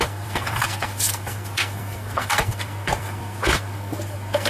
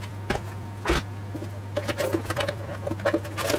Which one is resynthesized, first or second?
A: first